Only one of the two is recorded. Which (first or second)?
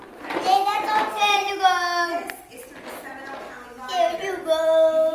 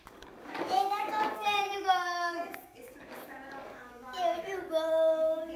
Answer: first